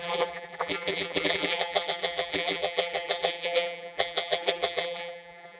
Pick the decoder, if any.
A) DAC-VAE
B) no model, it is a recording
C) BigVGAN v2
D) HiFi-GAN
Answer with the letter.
C